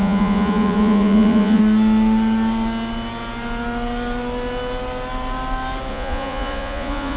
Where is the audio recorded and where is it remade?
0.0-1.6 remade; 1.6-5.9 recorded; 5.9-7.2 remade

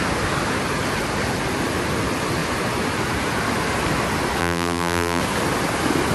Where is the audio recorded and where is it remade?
0.0-4.4 recorded; 4.4-5.2 remade; 5.2-6.1 recorded

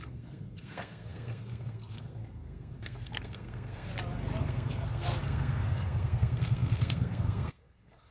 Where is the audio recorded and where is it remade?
0.0-3.9 remade; 3.9-4.4 recorded; 4.4-8.1 remade